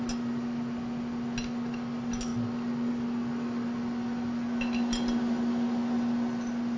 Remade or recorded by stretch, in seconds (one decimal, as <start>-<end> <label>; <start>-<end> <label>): 0.0-6.8 recorded